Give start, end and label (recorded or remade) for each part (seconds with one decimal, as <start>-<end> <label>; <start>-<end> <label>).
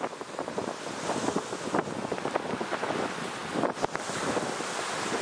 0.0-5.2 recorded